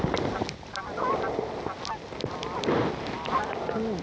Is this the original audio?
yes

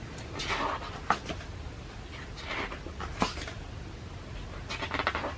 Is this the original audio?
yes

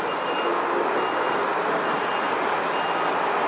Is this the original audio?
yes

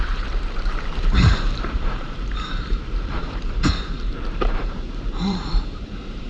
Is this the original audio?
no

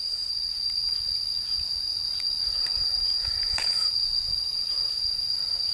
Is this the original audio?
no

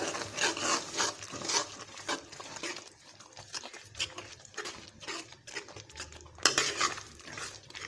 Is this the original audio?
yes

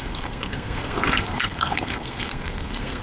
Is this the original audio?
no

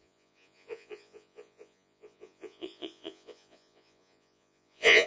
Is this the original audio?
no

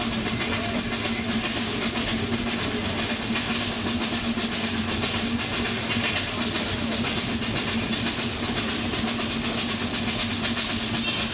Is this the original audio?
yes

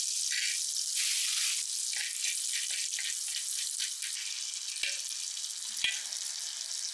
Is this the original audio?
yes